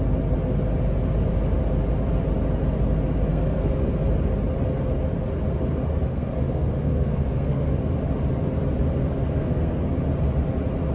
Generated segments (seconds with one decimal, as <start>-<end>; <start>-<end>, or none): 3.3-3.8; 6.1-7.7; 9.3-9.8